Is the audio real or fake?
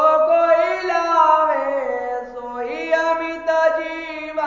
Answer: real